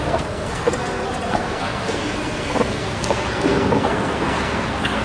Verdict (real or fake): fake